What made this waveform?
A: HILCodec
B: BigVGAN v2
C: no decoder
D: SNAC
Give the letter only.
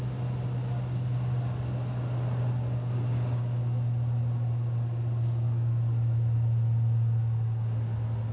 C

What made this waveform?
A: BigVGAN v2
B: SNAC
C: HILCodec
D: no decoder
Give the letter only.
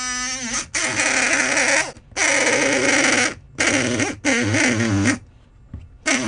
D